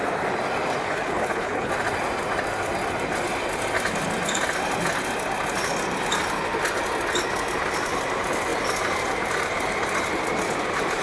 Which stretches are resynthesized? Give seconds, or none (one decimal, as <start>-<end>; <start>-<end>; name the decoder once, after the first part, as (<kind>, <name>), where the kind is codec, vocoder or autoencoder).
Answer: 0.8-1.7 (codec, HILCodec)